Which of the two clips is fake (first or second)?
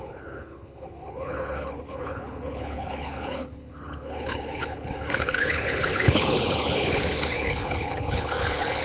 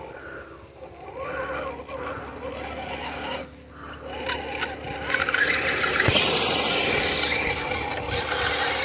first